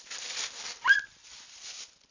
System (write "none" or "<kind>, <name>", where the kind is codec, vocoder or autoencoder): none